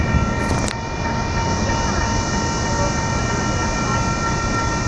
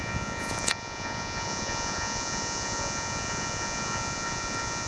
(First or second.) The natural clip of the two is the first